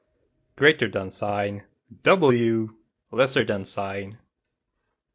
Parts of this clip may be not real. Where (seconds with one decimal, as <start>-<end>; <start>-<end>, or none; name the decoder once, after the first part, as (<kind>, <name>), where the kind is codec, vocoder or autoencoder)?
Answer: 1.3-2.3 (vocoder, BigVGAN v2)